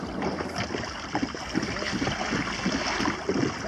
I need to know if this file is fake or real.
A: real